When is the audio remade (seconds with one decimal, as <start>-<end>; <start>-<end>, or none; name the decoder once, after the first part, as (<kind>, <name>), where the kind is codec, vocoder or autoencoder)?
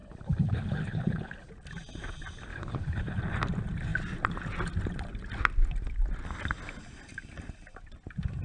0.0-1.5 (codec, HILCodec); 2.5-3.2